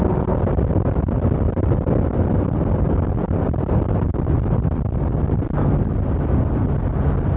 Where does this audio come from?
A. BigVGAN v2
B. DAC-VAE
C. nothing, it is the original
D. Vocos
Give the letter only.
C